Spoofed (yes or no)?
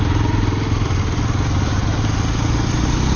no